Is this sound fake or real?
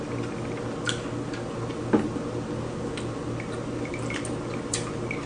real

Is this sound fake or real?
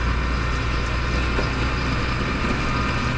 real